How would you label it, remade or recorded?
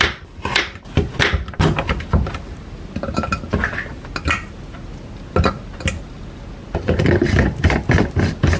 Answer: recorded